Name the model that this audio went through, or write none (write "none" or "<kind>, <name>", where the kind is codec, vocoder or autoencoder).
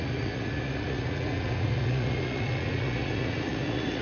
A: vocoder, Vocos